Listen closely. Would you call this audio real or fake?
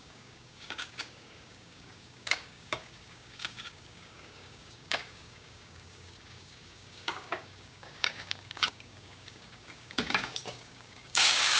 fake